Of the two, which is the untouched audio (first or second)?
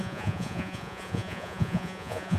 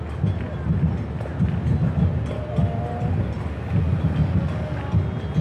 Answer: second